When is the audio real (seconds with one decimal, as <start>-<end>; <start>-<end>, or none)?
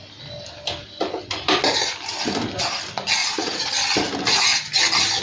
0.0-3.2; 3.7-5.2